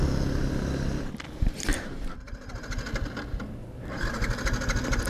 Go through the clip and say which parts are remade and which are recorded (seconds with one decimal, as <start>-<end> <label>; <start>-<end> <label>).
0.0-1.7 recorded; 1.7-2.5 remade; 2.5-5.1 recorded